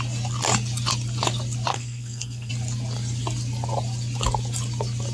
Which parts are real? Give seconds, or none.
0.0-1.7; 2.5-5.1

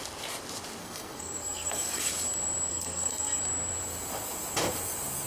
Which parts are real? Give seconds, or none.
0.0-0.8; 2.1-2.7; 3.4-5.3

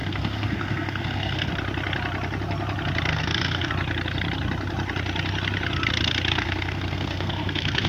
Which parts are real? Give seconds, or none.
1.5-3.1; 3.7-6.3